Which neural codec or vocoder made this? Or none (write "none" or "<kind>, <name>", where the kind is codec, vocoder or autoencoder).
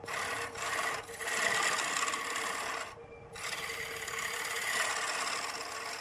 none